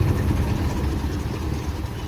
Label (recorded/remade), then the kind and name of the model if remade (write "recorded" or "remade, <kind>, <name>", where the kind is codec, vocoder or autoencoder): recorded